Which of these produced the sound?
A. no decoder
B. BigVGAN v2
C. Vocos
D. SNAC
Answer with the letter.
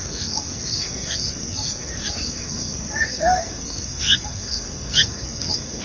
D